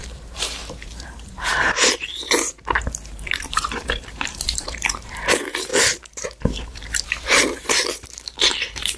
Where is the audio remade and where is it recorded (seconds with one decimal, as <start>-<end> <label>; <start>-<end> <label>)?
0.0-5.7 remade; 5.7-6.2 recorded; 6.2-9.0 remade